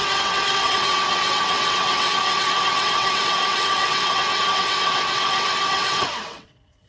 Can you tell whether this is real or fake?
fake